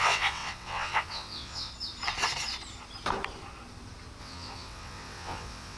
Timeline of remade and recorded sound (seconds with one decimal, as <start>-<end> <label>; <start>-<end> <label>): 0.0-1.7 remade; 1.7-4.2 recorded; 4.2-5.8 remade